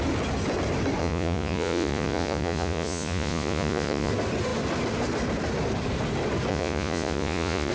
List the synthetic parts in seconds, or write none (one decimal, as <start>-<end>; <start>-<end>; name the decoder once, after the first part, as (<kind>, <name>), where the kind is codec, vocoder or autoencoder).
1.0-4.1 (vocoder, Vocos); 6.5-7.7